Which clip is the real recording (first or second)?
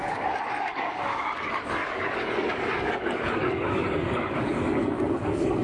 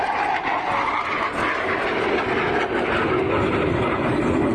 second